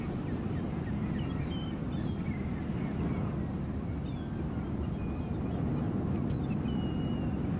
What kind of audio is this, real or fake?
real